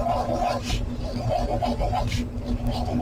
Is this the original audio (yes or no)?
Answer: yes